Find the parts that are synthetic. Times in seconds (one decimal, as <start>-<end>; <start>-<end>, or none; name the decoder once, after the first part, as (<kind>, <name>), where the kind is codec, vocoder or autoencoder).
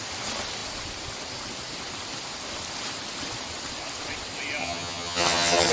4.6-5.7 (vocoder, HiFi-GAN)